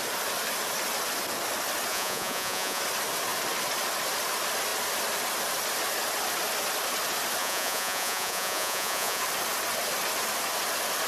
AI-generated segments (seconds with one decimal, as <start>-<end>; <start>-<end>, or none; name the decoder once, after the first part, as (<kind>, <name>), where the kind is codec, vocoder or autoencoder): 1.9-2.8 (vocoder, Vocos); 7.4-9.2